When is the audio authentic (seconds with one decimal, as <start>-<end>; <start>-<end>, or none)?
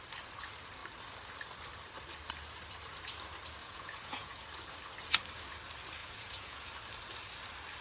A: 0.0-3.6; 4.4-6.0; 6.7-7.8